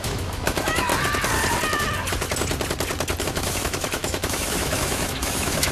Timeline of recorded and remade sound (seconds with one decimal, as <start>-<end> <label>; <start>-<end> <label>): 0.0-0.9 remade; 0.9-3.2 recorded; 3.2-5.7 remade

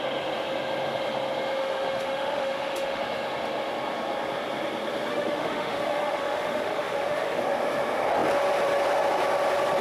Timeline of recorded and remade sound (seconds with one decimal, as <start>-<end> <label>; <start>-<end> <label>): 0.0-1.6 recorded; 1.6-3.0 remade; 3.0-5.1 recorded; 5.1-7.4 remade; 7.4-9.8 recorded

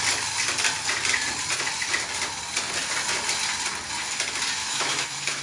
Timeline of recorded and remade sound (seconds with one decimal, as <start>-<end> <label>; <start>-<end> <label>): 0.0-4.6 recorded; 4.6-5.4 remade

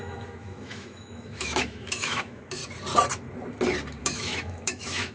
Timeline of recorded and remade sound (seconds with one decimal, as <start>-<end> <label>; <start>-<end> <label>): 0.0-2.6 remade; 2.6-4.0 recorded; 4.0-5.1 remade